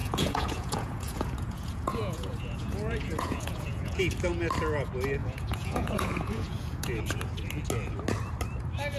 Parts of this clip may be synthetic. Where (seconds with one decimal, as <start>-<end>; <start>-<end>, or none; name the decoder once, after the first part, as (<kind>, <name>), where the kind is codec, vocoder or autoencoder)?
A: 0.0-4.0 (vocoder, Vocos); 5.2-7.0